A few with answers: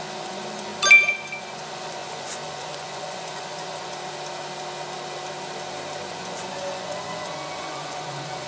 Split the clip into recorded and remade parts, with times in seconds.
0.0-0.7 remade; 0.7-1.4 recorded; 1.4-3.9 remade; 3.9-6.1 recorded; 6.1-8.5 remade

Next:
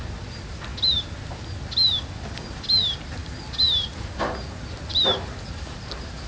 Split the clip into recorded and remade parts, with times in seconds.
0.0-6.3 recorded

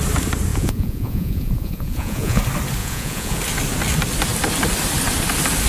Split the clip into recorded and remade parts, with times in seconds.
0.0-0.5 recorded; 0.5-2.4 remade; 2.4-2.8 recorded; 2.8-3.4 remade; 3.4-5.7 recorded

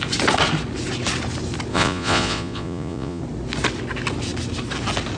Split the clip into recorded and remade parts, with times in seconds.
0.0-1.7 recorded; 1.7-3.2 remade; 3.2-5.2 recorded

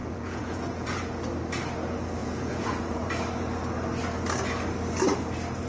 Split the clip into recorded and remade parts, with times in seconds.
0.0-1.0 remade; 1.0-2.2 recorded; 2.2-3.1 remade; 3.1-5.7 recorded

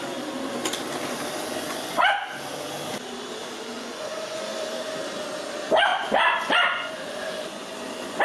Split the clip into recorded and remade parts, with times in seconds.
0.0-1.5 recorded; 1.5-2.1 remade; 2.1-3.4 recorded; 3.4-4.5 remade; 4.5-5.9 recorded; 5.9-8.2 remade